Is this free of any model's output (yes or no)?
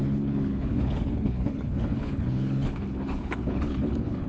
no